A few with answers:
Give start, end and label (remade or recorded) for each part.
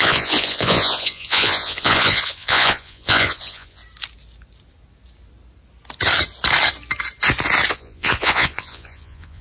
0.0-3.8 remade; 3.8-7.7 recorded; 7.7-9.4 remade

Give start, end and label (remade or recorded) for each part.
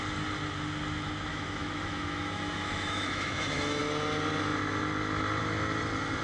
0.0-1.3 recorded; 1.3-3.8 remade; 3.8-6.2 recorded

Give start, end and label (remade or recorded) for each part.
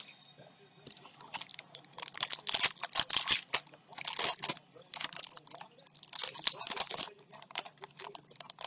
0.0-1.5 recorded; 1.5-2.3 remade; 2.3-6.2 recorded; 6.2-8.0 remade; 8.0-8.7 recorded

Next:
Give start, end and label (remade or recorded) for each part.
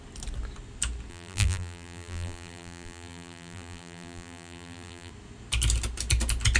0.0-1.1 recorded; 1.1-5.1 remade; 5.1-6.6 recorded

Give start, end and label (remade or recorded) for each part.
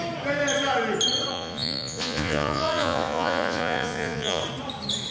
0.0-1.3 recorded; 1.3-4.4 remade; 4.4-5.1 recorded